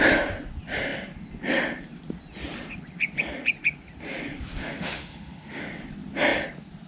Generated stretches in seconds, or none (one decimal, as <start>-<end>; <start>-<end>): 4.6-5.6